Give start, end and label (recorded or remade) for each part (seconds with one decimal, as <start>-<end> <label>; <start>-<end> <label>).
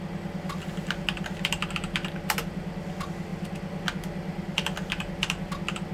0.0-5.9 recorded